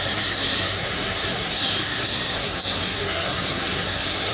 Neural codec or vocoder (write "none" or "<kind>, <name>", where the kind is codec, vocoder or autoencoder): codec, SNAC